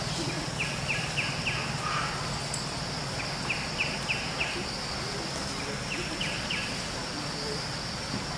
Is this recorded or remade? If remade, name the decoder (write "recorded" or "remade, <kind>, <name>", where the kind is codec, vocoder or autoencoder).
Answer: recorded